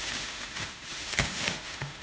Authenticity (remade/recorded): remade